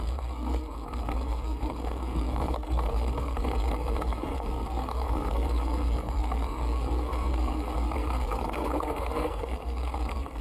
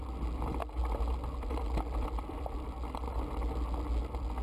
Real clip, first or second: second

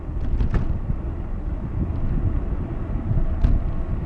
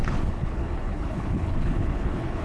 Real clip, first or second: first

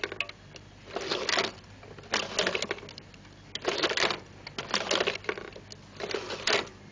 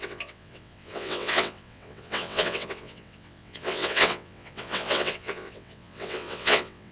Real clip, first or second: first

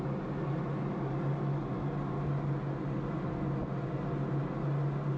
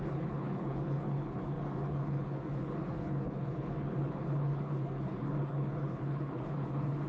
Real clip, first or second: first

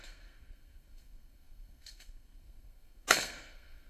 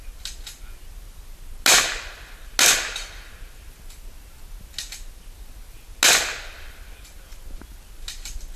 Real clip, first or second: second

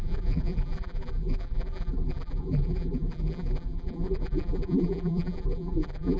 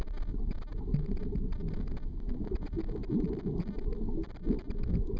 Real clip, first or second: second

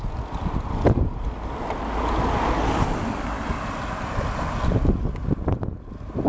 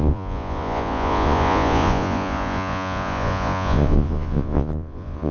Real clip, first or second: first